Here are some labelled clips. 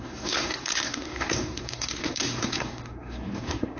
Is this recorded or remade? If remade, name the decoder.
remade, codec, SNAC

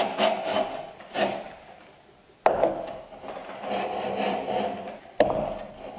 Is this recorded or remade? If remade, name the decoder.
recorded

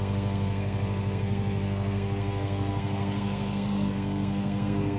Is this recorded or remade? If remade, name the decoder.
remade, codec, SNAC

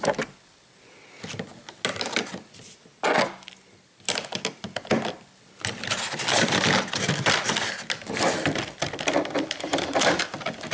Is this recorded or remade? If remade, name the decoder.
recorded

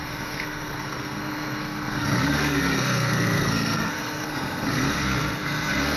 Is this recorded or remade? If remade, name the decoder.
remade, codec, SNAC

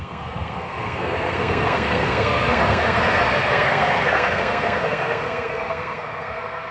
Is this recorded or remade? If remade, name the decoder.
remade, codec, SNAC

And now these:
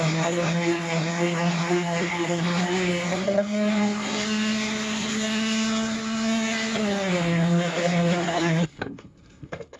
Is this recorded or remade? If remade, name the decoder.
remade, codec, SNAC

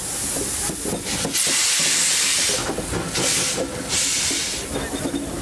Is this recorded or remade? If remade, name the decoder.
recorded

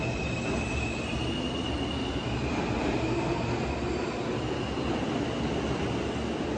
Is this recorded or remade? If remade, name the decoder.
recorded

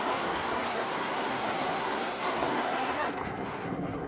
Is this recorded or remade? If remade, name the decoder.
remade, codec, SNAC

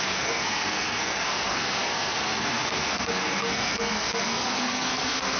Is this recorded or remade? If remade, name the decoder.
remade, codec, SNAC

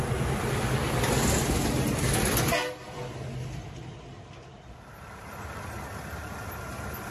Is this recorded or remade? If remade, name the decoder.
recorded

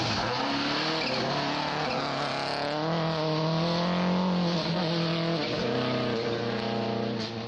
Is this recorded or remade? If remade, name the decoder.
recorded